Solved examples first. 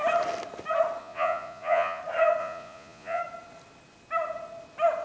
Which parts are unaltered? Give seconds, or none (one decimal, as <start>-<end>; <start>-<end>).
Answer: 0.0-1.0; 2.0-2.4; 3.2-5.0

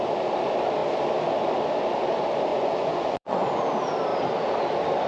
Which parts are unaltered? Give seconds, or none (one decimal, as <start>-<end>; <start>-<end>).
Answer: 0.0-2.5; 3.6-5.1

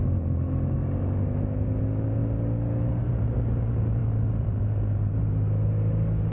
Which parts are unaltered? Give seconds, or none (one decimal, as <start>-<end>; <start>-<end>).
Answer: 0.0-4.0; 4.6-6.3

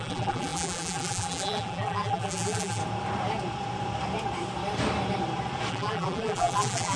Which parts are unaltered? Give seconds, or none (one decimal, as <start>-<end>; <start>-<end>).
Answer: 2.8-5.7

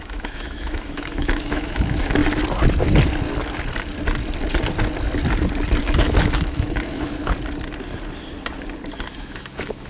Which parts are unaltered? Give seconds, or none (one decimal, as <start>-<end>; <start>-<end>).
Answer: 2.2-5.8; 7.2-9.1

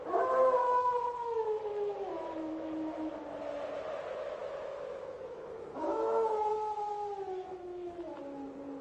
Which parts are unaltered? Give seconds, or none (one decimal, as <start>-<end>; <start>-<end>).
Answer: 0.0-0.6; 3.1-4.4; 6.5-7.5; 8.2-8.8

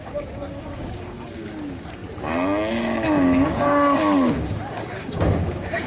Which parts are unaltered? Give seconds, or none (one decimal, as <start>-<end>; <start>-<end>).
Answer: 2.0-2.7

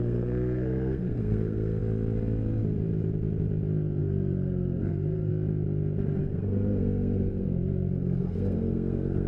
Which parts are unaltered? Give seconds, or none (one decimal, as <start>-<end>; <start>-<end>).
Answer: 1.8-4.0; 5.3-6.2